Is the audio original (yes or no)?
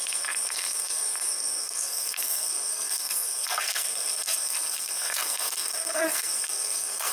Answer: no